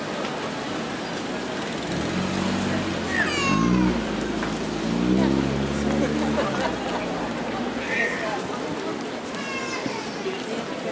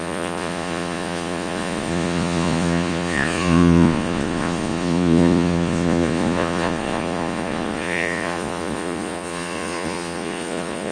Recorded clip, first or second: first